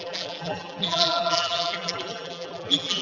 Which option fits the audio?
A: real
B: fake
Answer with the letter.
B